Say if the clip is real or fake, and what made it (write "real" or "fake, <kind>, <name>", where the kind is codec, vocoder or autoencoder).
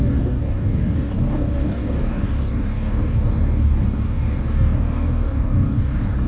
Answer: fake, codec, DAC